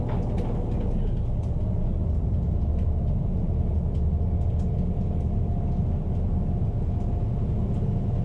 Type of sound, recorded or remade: recorded